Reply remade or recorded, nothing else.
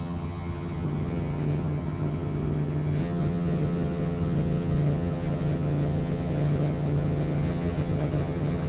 remade